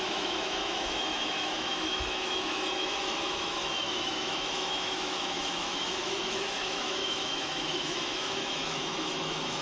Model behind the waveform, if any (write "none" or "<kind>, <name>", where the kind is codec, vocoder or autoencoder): autoencoder, DAC-VAE